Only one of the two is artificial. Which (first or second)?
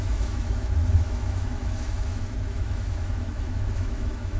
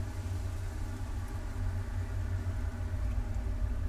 first